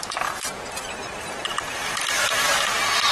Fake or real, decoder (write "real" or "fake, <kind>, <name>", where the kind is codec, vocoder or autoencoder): fake, vocoder, BigVGAN v2